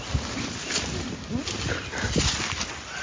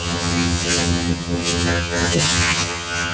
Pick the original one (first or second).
first